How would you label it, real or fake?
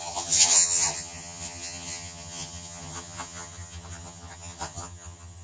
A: fake